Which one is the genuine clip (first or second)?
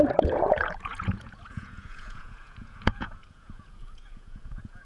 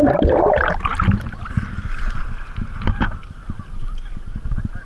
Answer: second